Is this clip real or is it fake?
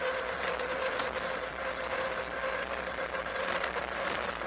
real